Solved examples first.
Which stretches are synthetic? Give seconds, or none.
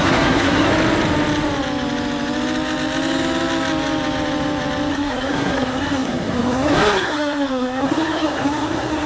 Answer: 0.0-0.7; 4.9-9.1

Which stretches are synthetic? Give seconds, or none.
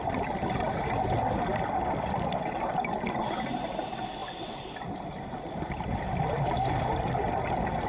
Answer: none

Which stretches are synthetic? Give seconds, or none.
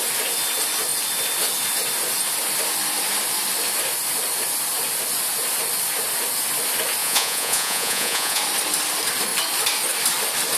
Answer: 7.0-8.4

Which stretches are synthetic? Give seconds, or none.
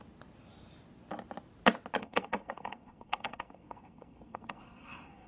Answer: 2.0-5.3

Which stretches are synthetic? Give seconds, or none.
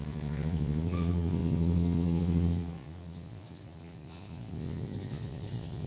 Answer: 0.0-5.9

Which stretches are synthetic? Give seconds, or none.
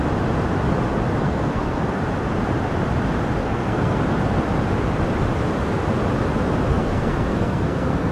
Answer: 1.2-2.0; 3.4-4.0; 6.7-8.1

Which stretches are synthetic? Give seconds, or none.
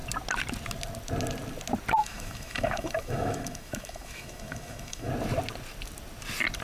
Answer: 2.0-5.1